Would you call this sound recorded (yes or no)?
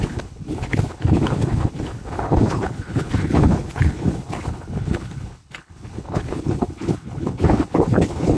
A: no